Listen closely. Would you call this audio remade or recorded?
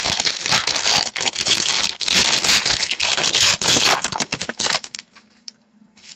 remade